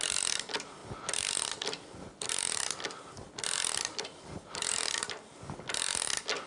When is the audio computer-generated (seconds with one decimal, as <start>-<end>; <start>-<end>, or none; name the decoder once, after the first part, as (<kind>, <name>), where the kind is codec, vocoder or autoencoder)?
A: none